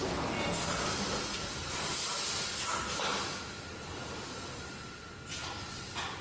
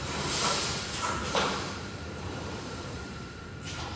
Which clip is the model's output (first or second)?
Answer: second